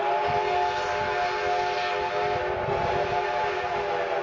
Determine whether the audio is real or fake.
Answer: real